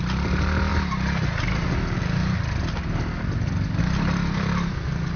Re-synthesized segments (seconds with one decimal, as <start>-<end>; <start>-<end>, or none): none